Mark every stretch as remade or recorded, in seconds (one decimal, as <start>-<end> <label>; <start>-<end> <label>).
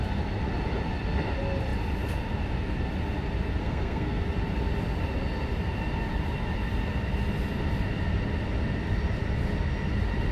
0.0-3.6 recorded; 3.6-4.2 remade; 4.2-10.3 recorded